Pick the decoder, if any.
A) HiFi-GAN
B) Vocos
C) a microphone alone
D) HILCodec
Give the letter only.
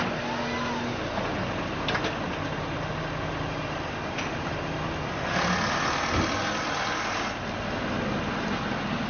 C